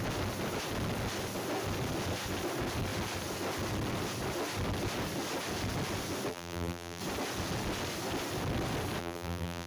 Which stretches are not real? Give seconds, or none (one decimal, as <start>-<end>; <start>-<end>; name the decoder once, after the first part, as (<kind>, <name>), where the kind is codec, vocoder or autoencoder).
6.3-7.0 (vocoder, BigVGAN v2); 9.0-9.7